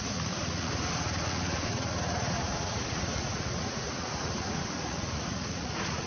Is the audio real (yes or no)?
no